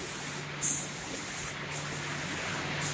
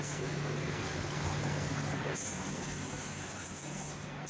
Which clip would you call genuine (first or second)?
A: first